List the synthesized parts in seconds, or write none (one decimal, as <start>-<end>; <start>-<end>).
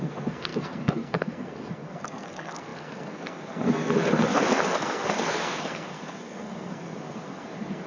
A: 0.0-7.9